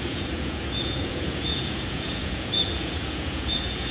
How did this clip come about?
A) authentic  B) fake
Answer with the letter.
B